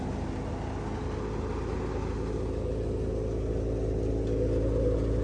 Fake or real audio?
real